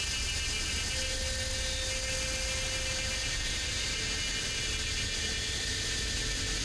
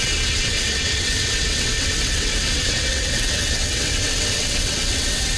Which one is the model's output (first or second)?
second